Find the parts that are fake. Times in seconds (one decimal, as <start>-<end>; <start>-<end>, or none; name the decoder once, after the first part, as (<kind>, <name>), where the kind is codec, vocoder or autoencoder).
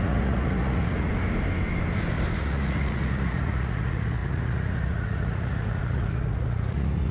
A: 0.0-1.1 (vocoder, Vocos); 2.4-7.1